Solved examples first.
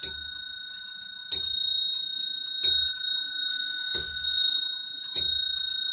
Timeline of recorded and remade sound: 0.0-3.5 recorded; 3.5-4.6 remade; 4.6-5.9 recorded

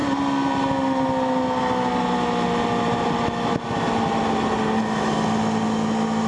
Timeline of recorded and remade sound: 0.0-6.3 recorded

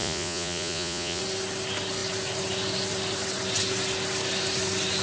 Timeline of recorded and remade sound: 0.0-1.2 remade; 1.2-5.0 recorded